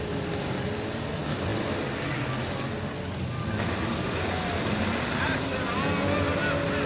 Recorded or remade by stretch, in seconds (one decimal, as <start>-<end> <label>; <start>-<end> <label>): 0.0-6.9 recorded